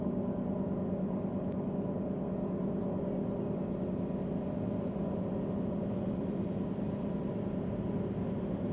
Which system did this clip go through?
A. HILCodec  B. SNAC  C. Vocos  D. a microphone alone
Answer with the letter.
D